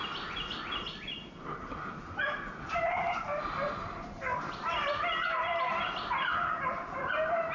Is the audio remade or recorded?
recorded